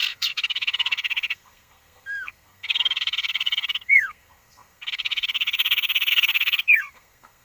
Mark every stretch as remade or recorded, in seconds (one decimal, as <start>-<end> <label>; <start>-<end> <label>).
0.0-7.4 remade